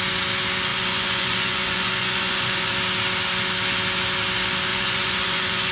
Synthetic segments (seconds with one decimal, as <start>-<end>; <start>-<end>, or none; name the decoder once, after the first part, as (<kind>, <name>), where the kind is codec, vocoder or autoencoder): 0.7-2.7 (vocoder, Vocos); 4.7-5.7